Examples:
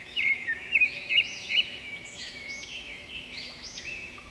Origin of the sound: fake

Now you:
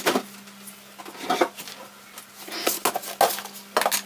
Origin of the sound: real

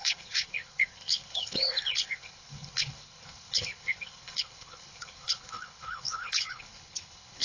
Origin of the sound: fake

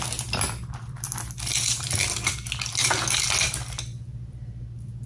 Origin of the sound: real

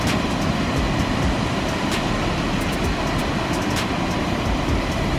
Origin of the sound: real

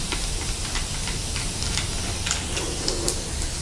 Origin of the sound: real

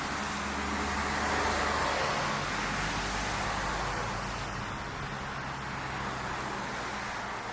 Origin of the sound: real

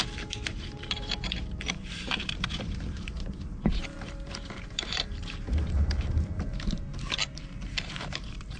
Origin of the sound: fake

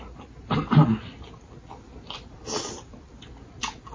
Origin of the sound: real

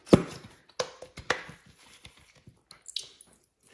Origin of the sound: real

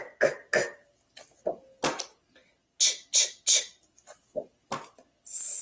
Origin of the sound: real